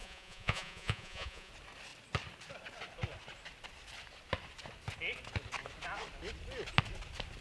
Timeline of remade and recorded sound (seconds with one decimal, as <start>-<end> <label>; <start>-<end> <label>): 0.0-1.5 remade; 1.5-7.4 recorded